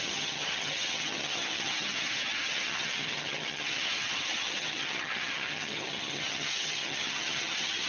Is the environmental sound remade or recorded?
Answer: remade